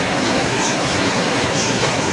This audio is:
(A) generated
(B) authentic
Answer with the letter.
A